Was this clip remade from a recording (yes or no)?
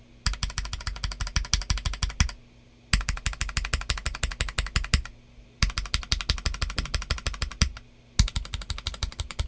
no